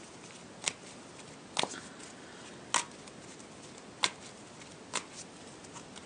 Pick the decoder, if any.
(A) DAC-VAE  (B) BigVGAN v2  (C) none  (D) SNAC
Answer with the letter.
C